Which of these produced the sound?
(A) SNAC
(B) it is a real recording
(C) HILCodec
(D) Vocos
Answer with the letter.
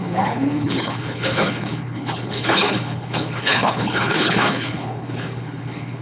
C